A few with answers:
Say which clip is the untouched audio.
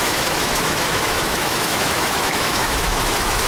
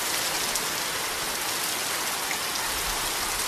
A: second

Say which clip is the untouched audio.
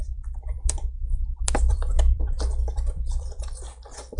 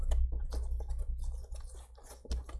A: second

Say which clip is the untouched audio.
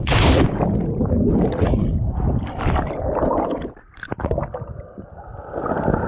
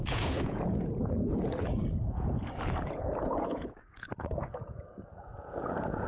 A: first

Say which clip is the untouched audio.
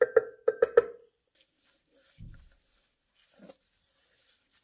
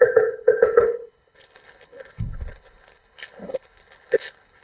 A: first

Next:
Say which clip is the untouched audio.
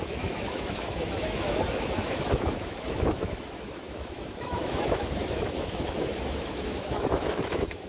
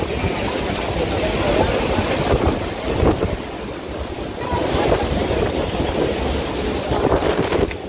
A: second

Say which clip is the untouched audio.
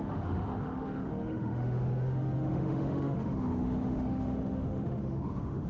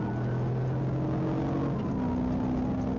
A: second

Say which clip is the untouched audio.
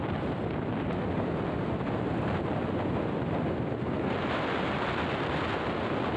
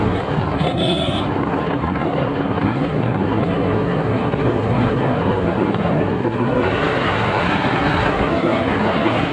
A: first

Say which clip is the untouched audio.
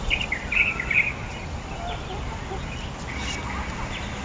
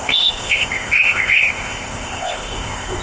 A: first